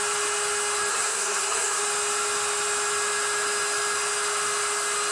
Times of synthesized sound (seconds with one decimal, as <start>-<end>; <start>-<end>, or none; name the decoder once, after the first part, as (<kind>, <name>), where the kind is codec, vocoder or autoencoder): 0.9-1.8 (codec, SNAC)